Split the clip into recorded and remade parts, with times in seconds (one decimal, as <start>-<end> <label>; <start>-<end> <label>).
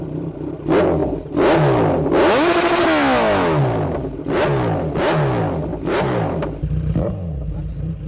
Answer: 0.0-5.7 recorded; 5.7-7.1 remade; 7.1-8.1 recorded